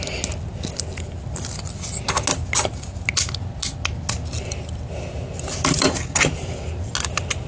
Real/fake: real